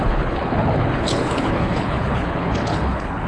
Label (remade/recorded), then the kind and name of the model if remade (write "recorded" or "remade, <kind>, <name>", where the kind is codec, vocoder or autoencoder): remade, codec, HILCodec